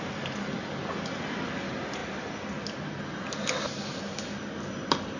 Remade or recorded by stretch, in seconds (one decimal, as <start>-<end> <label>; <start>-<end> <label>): 0.0-5.2 recorded